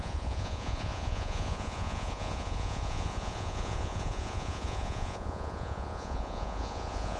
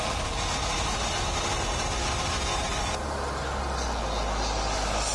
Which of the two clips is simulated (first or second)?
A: first